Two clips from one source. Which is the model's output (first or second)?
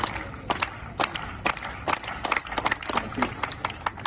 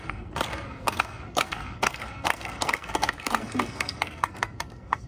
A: second